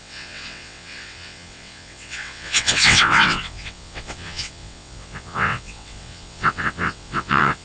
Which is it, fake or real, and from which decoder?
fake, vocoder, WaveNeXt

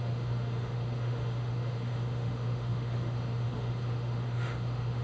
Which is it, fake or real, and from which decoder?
fake, autoencoder, DAC-VAE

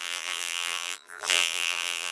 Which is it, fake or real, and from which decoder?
fake, vocoder, BigVGAN v2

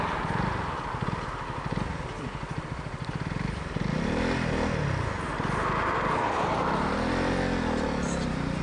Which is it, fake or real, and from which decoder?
real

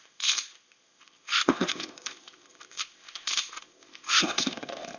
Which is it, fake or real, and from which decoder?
fake, codec, ZipCodec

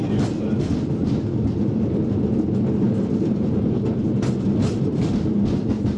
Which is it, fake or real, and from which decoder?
real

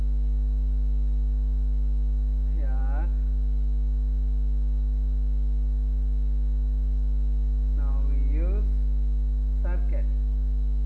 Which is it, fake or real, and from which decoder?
real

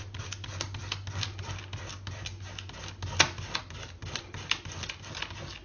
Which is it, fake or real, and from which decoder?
real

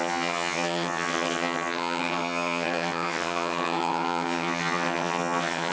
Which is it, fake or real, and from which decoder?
fake, vocoder, HiFi-GAN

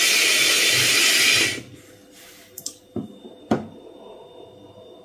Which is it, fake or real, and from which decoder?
real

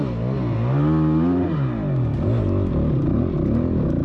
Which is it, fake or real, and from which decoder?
real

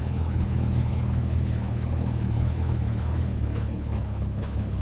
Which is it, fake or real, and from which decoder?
fake, codec, HILCodec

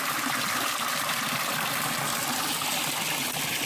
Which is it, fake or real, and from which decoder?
real